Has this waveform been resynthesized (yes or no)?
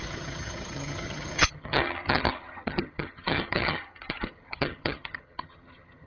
yes